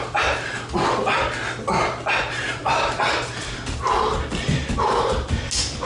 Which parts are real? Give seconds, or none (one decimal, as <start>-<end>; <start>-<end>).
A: 0.0-5.8